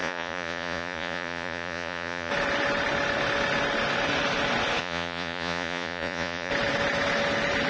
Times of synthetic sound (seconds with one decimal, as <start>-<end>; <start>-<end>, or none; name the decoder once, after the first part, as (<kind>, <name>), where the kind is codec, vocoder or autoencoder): 0.0-2.3 (vocoder, Vocos); 4.8-6.5